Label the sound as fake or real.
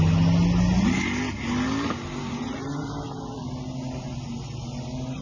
real